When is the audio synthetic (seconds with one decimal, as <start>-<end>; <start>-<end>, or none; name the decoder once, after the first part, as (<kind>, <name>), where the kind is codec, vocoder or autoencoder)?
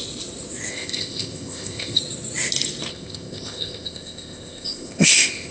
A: 0.7-2.0 (codec, ZipCodec); 2.9-5.5